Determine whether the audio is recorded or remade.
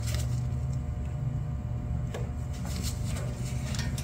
recorded